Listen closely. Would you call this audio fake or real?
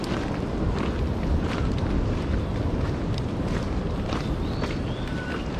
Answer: real